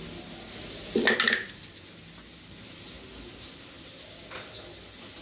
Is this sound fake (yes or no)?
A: no